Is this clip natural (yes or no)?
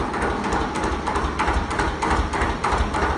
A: yes